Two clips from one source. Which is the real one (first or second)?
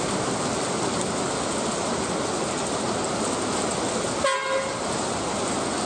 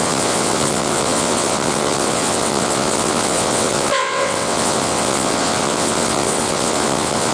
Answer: first